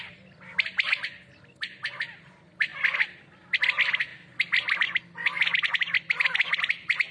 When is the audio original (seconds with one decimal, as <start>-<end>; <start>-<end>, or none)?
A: 0.0-7.1